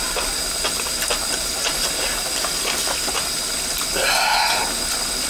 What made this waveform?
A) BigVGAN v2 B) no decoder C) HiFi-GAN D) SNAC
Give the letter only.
B